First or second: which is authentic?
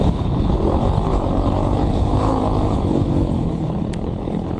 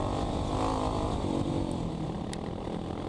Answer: second